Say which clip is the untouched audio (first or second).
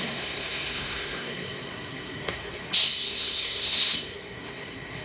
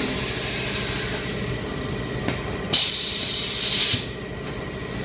second